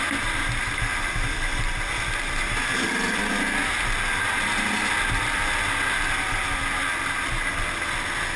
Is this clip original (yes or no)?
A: yes